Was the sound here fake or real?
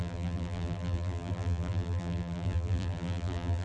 fake